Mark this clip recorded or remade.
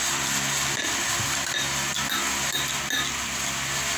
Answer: recorded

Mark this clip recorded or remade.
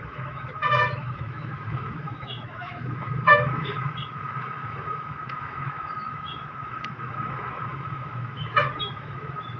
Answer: remade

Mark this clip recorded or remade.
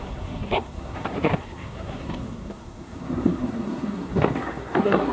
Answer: remade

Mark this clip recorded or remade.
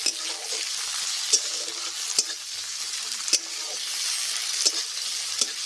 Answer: recorded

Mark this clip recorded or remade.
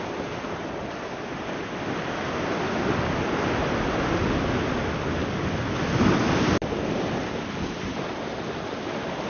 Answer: recorded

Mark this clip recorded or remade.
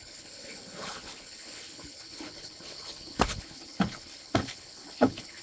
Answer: remade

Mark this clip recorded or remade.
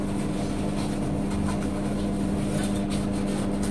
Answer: recorded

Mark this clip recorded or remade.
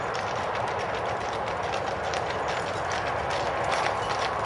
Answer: recorded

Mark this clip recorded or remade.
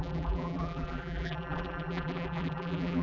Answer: remade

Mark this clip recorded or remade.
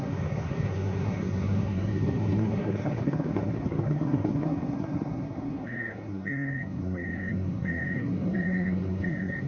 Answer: remade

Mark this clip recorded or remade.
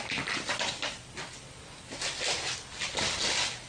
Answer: recorded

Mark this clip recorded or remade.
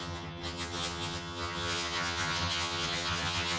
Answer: remade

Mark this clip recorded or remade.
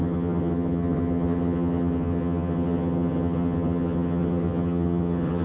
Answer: remade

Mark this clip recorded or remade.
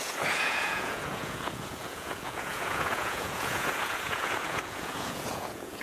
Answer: remade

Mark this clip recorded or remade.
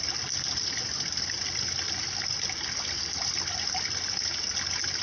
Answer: recorded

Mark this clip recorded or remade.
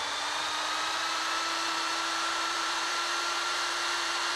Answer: remade